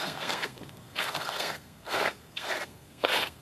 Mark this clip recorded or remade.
remade